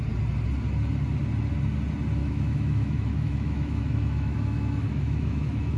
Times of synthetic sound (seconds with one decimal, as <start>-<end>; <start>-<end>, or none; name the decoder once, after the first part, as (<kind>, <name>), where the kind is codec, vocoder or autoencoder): 2.2-5.8 (autoencoder, DAC-VAE)